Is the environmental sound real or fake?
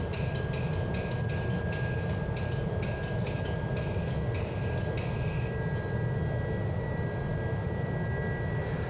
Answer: real